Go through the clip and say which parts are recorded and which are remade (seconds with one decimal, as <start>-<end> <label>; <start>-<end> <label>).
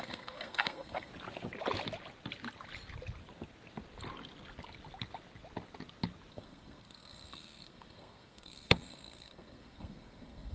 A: 0.0-1.1 remade; 1.1-6.3 recorded; 6.3-10.5 remade